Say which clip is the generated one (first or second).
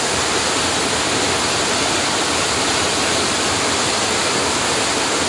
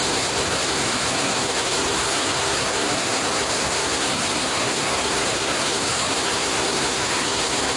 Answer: second